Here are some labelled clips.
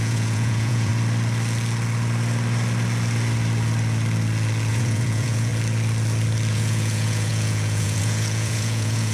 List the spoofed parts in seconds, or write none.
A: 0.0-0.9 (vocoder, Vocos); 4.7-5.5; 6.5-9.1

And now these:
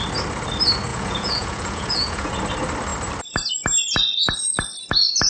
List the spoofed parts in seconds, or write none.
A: 0.9-2.3 (vocoder, Vocos)